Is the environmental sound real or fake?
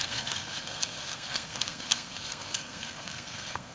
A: fake